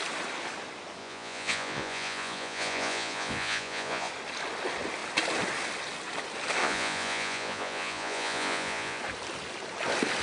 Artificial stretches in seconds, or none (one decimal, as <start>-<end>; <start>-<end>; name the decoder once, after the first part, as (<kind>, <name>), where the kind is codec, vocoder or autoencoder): 1.0-4.1 (vocoder, Vocos); 6.6-9.0